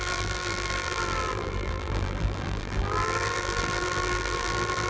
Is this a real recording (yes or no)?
no